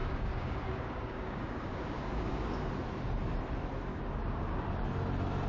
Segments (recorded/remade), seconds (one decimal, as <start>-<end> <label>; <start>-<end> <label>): 0.0-2.7 remade; 2.7-3.9 recorded; 3.9-4.7 remade; 4.7-5.5 recorded